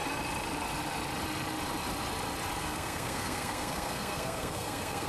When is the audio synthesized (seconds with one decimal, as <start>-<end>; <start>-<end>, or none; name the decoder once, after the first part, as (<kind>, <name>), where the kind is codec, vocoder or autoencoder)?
2.6-5.1 (codec, SNAC)